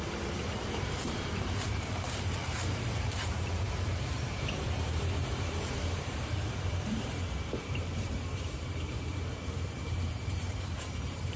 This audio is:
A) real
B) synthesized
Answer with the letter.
B